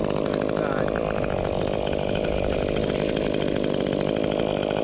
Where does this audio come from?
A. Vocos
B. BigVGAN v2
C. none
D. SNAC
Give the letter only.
C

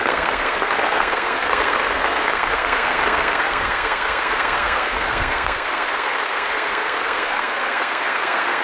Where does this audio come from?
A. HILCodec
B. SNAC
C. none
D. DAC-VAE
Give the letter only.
B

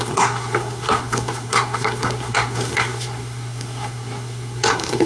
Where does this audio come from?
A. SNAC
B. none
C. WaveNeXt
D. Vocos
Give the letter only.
A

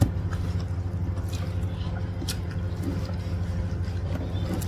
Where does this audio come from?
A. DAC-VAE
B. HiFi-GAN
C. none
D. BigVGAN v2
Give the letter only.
C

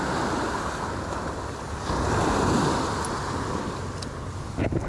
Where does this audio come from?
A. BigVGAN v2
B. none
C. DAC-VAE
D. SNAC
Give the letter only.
B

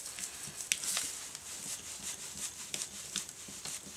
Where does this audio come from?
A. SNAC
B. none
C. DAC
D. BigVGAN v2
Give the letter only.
B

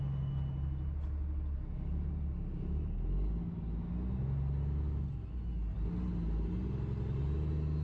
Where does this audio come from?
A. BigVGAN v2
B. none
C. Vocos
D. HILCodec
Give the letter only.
B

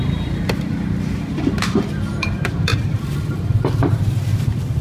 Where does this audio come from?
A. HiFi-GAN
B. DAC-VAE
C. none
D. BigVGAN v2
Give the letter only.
D